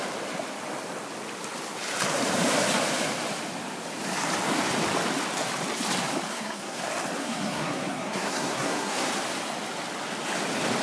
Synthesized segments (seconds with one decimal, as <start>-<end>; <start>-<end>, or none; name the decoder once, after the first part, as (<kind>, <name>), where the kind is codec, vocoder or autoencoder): 6.3-6.8 (codec, SNAC); 7.2-9.1